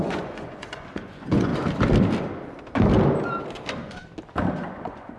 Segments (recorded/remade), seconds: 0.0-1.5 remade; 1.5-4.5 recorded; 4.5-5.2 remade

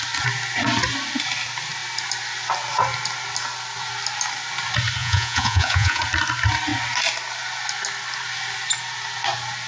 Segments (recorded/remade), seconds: 0.0-5.0 recorded; 5.0-6.0 remade; 6.0-9.7 recorded

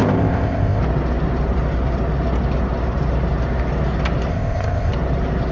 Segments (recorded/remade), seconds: 0.0-0.8 remade; 0.8-4.3 recorded; 4.3-4.9 remade; 4.9-5.5 recorded

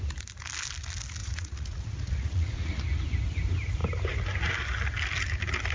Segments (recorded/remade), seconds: 0.0-1.2 recorded; 1.2-2.8 remade; 2.8-5.7 recorded

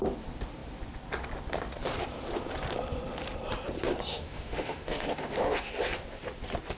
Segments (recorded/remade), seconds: 0.0-4.1 recorded; 4.1-5.7 remade; 5.7-6.8 recorded

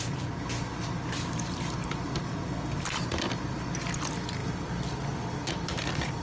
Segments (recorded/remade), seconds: 0.0-6.2 recorded

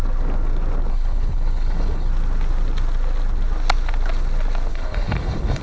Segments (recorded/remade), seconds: 0.0-0.9 recorded; 0.9-2.1 remade; 2.1-4.7 recorded; 4.7-5.6 remade